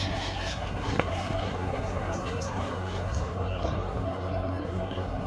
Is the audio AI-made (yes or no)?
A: yes